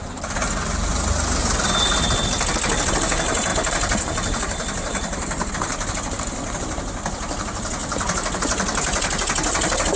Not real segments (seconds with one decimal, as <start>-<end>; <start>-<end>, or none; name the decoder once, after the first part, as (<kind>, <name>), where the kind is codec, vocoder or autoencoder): 1.4-2.9 (vocoder, BigVGAN v2); 3.5-5.5; 7.8-8.4